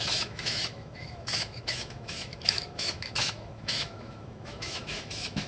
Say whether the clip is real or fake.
fake